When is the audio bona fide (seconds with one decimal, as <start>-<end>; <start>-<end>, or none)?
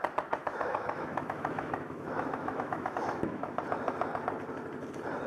0.0-0.4; 3.6-5.3